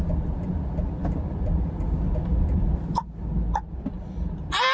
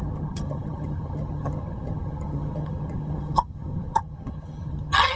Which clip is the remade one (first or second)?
second